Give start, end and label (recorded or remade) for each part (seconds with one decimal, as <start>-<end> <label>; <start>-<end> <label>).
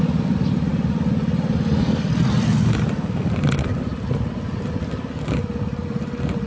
0.0-6.5 recorded